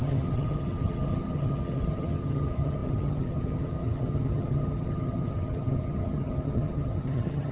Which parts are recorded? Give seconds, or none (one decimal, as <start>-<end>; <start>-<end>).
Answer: none